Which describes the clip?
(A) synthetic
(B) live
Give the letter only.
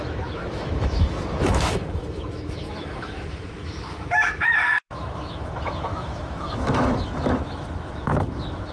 A